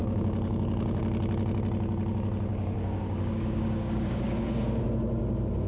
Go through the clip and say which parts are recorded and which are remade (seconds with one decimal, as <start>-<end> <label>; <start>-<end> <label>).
0.0-1.0 remade; 1.0-2.5 recorded; 2.5-4.8 remade; 4.8-5.7 recorded